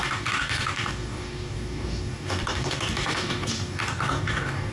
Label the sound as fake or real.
fake